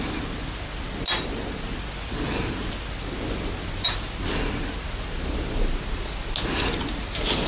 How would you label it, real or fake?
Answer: real